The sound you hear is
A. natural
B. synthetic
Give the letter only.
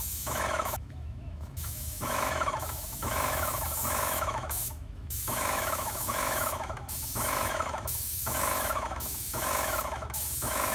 B